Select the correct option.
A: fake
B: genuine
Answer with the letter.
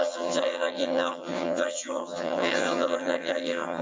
A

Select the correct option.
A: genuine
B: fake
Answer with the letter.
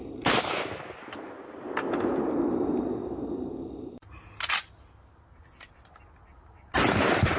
A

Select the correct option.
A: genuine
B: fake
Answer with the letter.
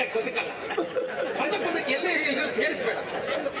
B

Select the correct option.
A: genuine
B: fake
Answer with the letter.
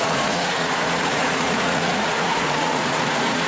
B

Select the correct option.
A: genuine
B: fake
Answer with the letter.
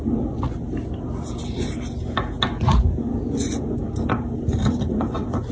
A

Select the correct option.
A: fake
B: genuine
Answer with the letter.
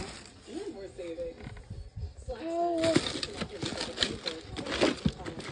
B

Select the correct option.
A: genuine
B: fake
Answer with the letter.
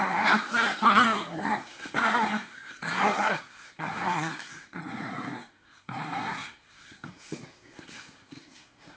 B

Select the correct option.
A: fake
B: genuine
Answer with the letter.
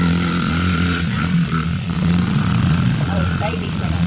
A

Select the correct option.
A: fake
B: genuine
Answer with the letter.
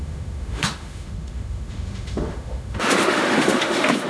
A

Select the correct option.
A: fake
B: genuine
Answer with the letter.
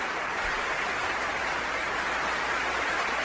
A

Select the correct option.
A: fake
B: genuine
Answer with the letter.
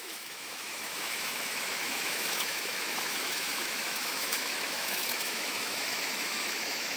A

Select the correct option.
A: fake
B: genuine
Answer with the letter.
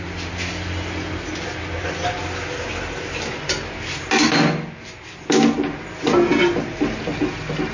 B